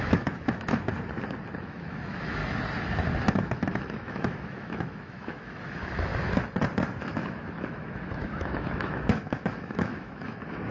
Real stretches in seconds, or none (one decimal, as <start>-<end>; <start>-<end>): 0.9-1.6; 2.4-3.3; 6.1-7.0